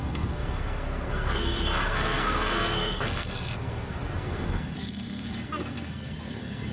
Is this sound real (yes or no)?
no